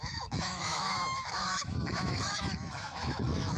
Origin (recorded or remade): remade